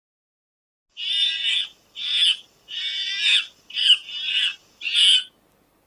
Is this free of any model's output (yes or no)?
yes